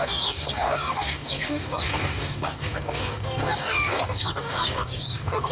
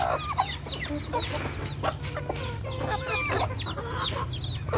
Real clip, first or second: second